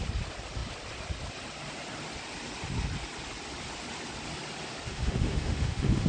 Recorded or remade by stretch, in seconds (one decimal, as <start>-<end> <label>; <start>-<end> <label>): 0.0-4.9 recorded; 4.9-6.1 remade